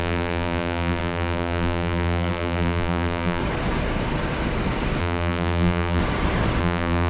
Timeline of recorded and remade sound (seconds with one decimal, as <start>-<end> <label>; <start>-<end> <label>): 0.0-3.4 remade; 3.4-5.0 recorded; 5.0-6.0 remade; 6.0-6.6 recorded; 6.6-7.1 remade